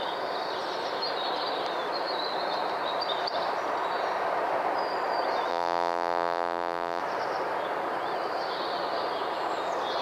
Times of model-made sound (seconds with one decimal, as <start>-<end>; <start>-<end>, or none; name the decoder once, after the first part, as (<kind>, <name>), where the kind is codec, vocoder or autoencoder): 5.5-7.0 (vocoder, BigVGAN v2)